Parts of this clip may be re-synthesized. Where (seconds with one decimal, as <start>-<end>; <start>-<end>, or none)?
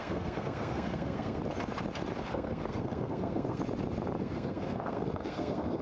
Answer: 0.0-1.4; 2.2-3.6; 4.2-5.8